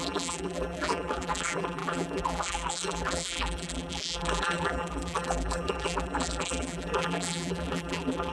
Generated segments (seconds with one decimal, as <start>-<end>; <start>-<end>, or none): 0.0-8.3